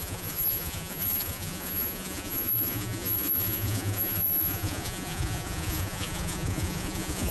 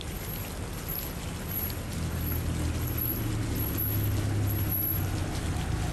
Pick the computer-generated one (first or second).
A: first